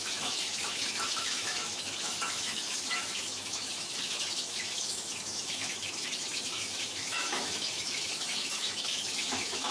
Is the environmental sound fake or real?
fake